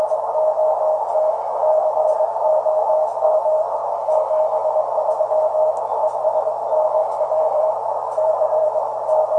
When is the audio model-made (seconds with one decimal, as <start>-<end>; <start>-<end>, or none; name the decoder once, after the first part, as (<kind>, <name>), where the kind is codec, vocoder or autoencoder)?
7.0-8.8 (vocoder, BigVGAN v2)

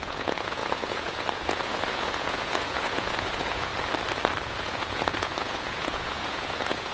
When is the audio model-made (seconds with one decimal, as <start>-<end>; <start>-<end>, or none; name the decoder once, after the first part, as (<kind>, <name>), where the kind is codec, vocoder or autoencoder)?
0.0-3.7 (vocoder, Vocos); 4.5-6.9

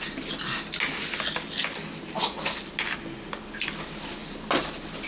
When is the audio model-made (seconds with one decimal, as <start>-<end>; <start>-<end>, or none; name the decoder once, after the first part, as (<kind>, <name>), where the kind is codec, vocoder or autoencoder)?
none